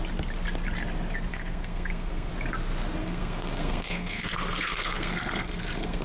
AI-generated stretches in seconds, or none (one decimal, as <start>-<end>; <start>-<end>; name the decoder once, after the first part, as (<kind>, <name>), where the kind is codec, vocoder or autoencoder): 1.3-2.3 (codec, SNAC); 3.0-6.0